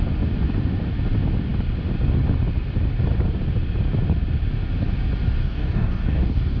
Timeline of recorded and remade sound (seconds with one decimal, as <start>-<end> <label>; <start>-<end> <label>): 0.0-5.4 recorded; 5.4-6.6 remade